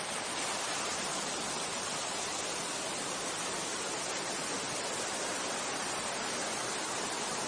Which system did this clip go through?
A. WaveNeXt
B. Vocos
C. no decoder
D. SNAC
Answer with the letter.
C